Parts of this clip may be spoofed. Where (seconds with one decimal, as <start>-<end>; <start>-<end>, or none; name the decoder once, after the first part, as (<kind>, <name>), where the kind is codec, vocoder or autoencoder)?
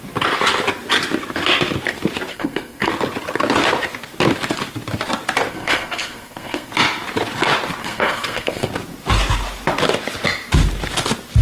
2.3-2.9 (codec, SNAC); 5.5-6.7; 7.8-8.7